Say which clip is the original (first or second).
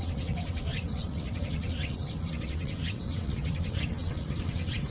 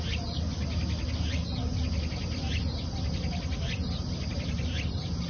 second